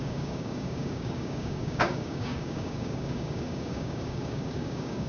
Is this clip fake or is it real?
fake